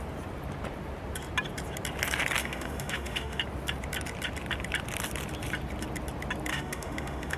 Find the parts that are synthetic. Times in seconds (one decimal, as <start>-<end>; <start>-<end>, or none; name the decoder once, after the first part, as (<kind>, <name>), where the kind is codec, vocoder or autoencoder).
2.4-3.4 (autoencoder, DAC-VAE); 6.5-7.4